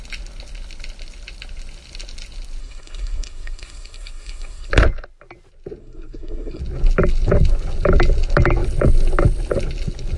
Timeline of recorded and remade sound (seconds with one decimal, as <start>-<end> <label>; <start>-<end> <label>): 0.0-2.6 recorded; 2.6-4.7 remade; 4.7-5.8 recorded; 5.8-6.6 remade; 6.6-10.2 recorded